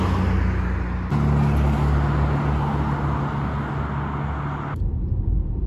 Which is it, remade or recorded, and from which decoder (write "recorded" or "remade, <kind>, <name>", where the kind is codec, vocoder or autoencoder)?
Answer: recorded